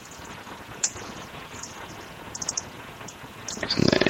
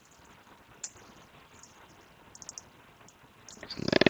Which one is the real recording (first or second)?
second